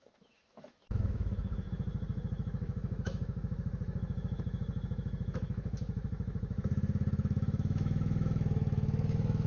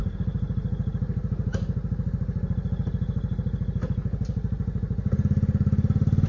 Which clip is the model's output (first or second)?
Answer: first